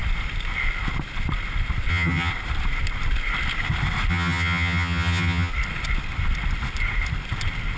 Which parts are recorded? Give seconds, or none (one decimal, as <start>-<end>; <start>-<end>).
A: 0.0-1.9; 2.3-4.1; 5.5-7.8